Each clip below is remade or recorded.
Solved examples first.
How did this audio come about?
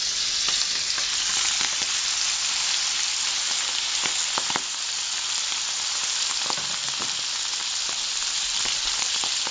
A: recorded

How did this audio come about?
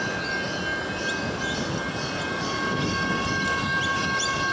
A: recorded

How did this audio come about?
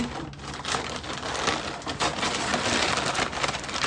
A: recorded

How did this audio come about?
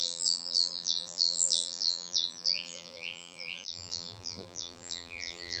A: remade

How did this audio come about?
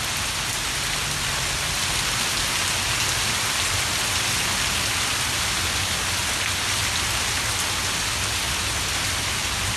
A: recorded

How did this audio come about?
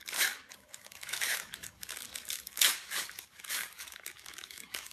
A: remade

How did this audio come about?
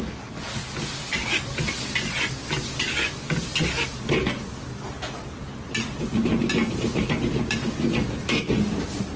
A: recorded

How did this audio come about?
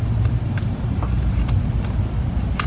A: recorded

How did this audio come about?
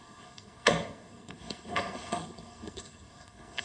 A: remade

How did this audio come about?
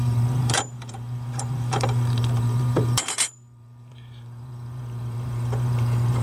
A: remade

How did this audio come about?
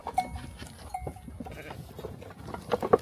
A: recorded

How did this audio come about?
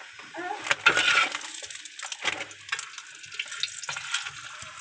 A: recorded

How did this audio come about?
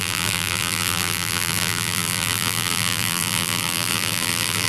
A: remade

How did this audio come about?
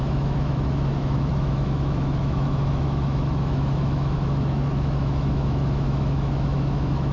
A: remade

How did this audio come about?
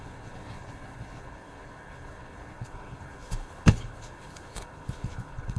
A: remade